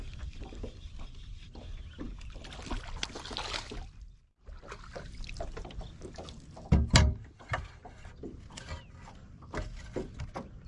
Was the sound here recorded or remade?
recorded